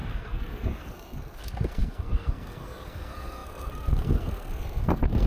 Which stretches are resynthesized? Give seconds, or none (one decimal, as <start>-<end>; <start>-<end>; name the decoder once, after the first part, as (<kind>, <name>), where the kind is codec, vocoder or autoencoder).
0.0-5.3 (codec, SNAC)

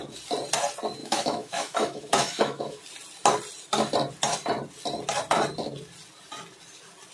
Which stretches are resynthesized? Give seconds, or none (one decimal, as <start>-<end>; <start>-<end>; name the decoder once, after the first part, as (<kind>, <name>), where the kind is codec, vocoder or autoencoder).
1.0-2.8 (autoencoder, DAC-VAE)

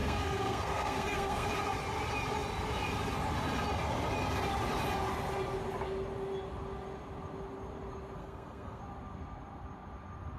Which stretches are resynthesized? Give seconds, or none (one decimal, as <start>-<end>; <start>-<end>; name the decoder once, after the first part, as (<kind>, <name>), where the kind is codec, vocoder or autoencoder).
0.0-1.5 (codec, SNAC); 8.2-8.8